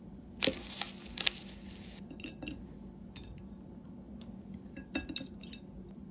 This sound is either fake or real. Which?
real